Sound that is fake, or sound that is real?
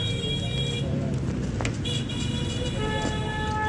real